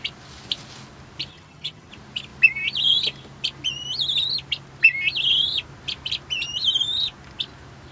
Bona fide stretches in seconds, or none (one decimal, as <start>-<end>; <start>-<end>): 0.0-1.3; 1.9-7.9